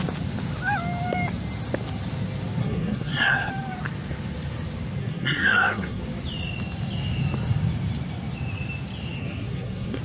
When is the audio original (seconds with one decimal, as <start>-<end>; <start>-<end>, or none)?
0.0-2.6; 3.5-5.0; 6.0-9.2